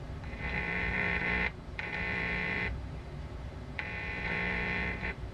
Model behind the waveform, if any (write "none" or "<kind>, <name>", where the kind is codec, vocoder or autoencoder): vocoder, BigVGAN v2